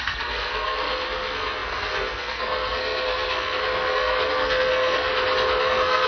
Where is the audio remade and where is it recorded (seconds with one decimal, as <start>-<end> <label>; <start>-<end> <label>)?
0.0-5.1 remade; 5.1-5.6 recorded; 5.6-6.1 remade